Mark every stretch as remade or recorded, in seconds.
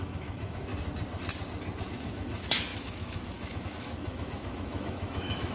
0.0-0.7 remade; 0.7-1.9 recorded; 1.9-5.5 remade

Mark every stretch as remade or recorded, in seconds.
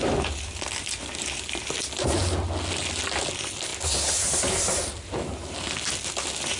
0.0-6.6 recorded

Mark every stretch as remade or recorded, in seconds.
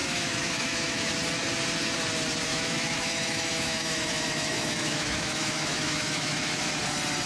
0.0-1.1 remade; 1.1-2.5 recorded; 2.5-6.8 remade; 6.8-7.3 recorded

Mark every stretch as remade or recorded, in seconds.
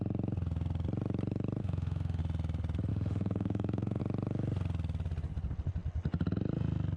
0.0-1.6 recorded; 1.6-2.2 remade; 2.2-2.9 recorded; 2.9-4.0 remade; 4.0-7.0 recorded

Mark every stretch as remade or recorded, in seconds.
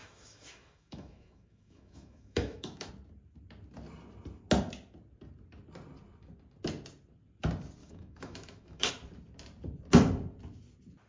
0.0-2.9 remade; 2.9-7.8 recorded; 7.8-8.9 remade; 8.9-11.1 recorded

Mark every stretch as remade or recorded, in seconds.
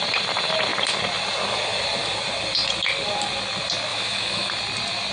0.0-3.9 recorded; 3.9-4.5 remade; 4.5-5.1 recorded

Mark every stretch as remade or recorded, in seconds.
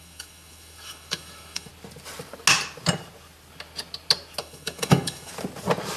0.0-1.7 remade; 1.7-4.4 recorded; 4.4-5.3 remade; 5.3-6.0 recorded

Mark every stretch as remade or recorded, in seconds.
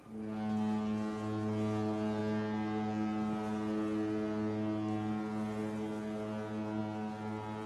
0.0-7.7 recorded